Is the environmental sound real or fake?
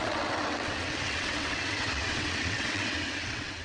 fake